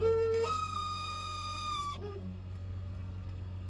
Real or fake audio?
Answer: fake